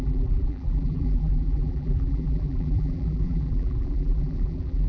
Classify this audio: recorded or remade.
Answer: remade